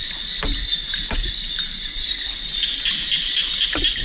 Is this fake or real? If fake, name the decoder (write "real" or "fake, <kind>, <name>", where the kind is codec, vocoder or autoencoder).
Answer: fake, vocoder, BigVGAN v2